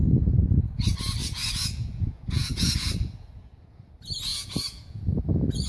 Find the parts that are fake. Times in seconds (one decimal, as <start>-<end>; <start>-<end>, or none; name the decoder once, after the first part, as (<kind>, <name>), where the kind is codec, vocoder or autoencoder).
1.2-3.9 (vocoder, Vocos); 4.3-5.2